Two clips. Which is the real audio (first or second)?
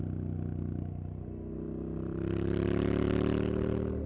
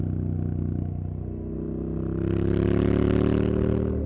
second